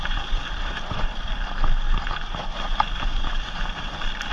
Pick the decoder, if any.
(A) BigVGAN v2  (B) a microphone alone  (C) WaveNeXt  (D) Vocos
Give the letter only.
A